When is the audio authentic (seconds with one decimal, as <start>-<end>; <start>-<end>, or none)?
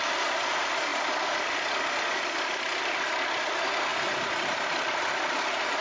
0.0-5.8